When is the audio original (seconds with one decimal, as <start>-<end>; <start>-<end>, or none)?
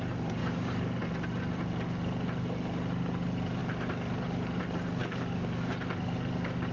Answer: 0.0-0.4; 1.0-5.0; 5.7-6.7